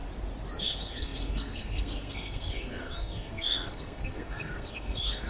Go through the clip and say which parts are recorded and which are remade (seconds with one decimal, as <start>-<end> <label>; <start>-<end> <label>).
0.0-0.6 recorded; 0.6-5.3 remade